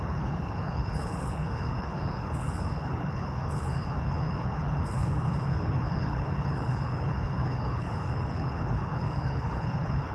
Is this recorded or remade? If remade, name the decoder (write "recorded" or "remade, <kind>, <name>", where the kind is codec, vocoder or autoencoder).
remade, codec, HILCodec